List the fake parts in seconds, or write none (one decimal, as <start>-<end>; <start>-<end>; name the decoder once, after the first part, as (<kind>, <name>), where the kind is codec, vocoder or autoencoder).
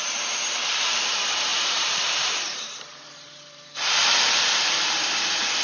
0.0-5.6 (vocoder, BigVGAN v2)